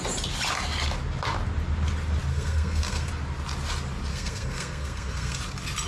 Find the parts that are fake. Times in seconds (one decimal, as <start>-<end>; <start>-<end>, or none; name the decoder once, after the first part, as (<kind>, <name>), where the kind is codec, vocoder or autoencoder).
2.3-3.1 (codec, SNAC); 4.1-5.4